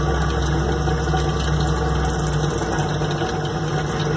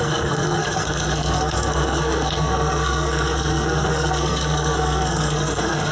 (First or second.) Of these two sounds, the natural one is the first